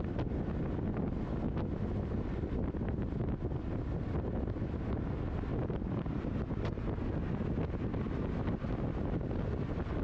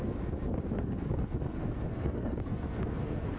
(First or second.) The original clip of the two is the first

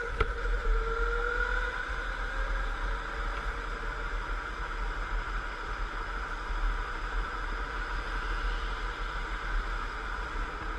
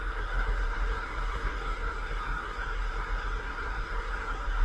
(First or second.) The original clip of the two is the first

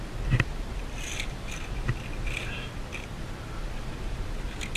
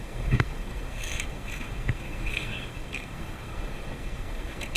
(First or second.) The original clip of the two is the first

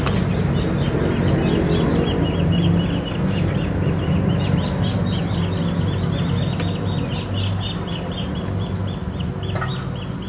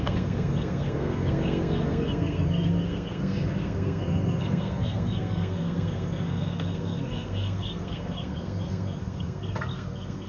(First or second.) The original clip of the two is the first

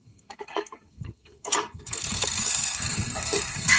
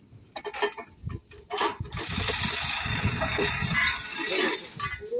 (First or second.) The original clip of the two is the second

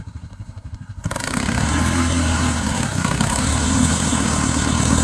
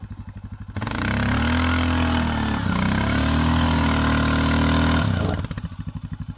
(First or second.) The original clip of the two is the second